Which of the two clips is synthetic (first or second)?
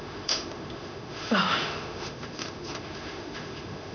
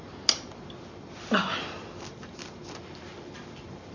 first